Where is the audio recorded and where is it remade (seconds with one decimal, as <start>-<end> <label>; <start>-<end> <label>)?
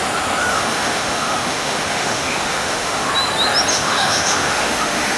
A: 0.0-0.5 recorded; 0.5-3.1 remade; 3.1-3.7 recorded; 3.7-5.2 remade